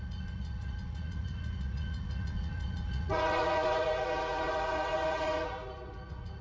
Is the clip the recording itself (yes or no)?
no